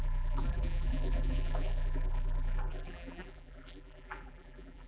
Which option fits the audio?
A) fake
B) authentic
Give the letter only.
A